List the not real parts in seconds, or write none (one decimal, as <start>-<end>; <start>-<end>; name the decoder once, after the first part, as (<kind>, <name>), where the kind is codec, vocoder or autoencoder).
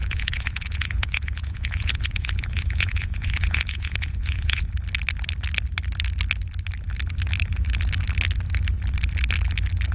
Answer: 0.0-4.7 (vocoder, Vocos)